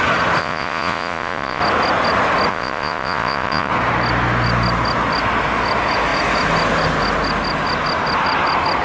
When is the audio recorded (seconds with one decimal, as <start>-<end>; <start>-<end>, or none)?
0.0-0.4; 1.6-2.5; 3.7-8.8